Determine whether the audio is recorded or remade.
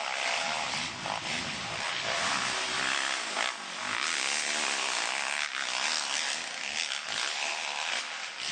recorded